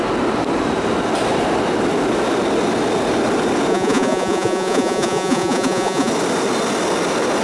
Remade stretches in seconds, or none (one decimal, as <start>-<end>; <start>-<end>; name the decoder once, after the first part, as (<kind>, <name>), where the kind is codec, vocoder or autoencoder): 3.7-6.1 (vocoder, Vocos)